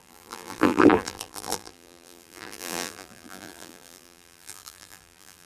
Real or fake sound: fake